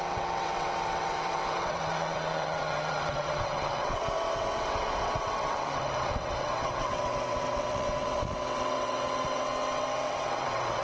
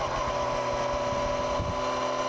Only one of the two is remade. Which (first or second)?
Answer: first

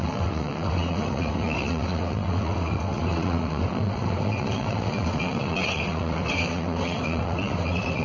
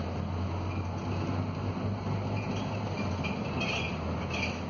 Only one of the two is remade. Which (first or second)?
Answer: first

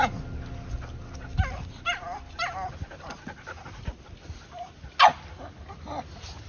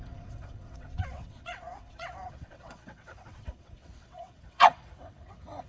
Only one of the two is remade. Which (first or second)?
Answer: second